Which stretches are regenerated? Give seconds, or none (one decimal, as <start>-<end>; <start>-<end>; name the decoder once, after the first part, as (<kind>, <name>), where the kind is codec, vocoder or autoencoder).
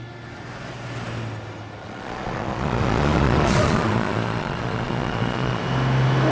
1.8-5.6 (vocoder, Vocos)